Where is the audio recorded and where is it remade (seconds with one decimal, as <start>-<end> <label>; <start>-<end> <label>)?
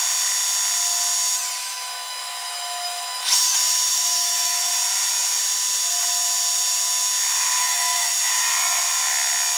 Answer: 0.0-1.6 recorded; 1.6-3.2 remade; 3.2-3.9 recorded; 3.9-4.7 remade; 4.7-7.6 recorded; 7.6-8.1 remade; 8.1-9.6 recorded